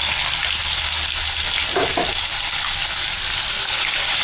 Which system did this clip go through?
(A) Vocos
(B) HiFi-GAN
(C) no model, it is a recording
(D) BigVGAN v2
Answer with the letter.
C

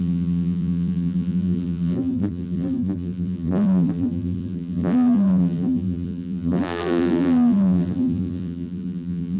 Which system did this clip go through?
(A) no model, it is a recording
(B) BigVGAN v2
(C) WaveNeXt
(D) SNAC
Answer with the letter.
B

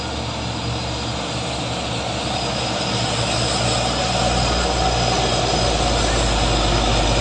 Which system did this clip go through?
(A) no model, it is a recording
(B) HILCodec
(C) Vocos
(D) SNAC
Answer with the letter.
A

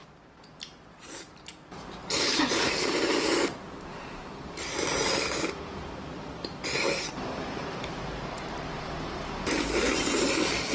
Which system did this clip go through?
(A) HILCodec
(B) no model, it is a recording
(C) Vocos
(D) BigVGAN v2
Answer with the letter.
D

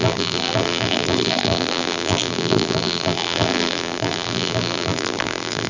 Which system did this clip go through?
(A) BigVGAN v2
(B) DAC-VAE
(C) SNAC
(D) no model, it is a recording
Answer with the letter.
A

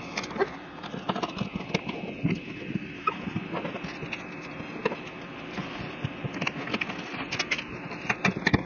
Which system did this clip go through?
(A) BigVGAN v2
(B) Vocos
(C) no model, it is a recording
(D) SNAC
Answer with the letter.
C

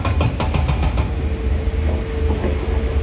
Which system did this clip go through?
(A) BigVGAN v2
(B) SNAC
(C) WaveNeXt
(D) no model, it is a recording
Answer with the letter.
D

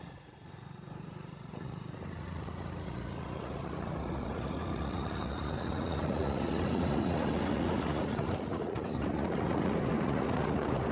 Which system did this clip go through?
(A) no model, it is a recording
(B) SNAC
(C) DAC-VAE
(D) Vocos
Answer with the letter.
D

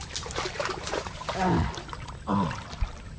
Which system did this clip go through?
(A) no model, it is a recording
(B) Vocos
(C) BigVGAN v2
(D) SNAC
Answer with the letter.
A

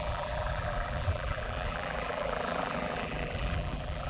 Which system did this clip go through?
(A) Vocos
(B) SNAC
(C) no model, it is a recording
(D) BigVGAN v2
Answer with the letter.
D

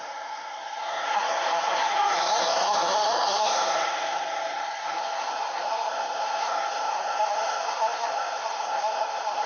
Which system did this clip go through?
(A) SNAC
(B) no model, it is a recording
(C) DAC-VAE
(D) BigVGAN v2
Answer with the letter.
A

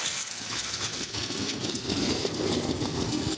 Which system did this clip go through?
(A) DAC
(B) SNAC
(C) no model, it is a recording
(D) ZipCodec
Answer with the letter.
B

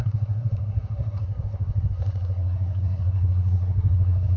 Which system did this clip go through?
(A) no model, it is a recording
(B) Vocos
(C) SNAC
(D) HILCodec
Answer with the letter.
C